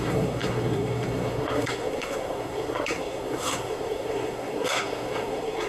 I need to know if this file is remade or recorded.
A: remade